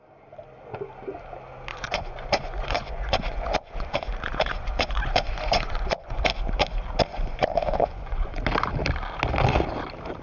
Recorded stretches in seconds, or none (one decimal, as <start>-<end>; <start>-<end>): 0.0-1.7; 6.2-7.1; 8.4-10.2